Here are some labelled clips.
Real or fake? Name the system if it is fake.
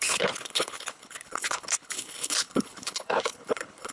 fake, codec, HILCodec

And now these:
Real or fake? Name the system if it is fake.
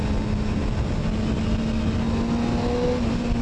real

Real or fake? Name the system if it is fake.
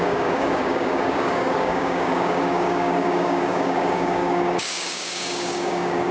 fake, codec, DAC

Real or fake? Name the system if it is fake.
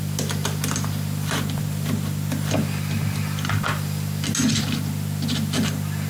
real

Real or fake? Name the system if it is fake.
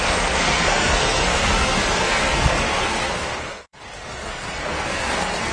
fake, codec, SNAC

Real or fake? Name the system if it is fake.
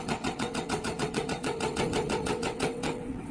fake, vocoder, WaveNeXt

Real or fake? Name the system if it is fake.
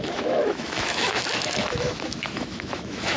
fake, autoencoder, DAC-VAE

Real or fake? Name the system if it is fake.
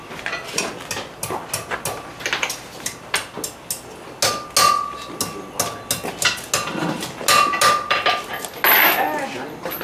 real